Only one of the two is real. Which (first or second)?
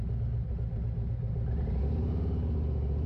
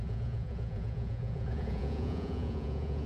first